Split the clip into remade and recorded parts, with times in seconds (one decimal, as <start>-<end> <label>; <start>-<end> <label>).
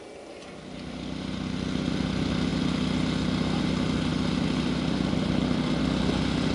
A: 0.0-6.5 recorded